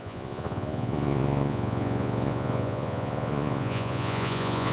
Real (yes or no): no